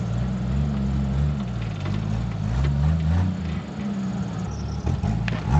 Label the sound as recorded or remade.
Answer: recorded